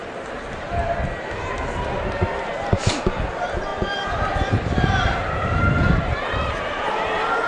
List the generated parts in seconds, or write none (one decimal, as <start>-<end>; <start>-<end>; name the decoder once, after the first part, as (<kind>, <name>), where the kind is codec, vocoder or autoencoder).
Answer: 3.7-6.5 (vocoder, BigVGAN v2)